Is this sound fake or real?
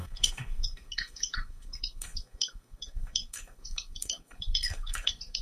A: fake